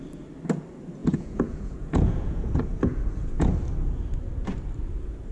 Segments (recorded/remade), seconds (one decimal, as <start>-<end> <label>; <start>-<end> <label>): 0.0-1.0 recorded; 1.0-3.5 remade; 3.5-5.3 recorded